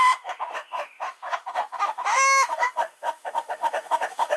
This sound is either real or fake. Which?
fake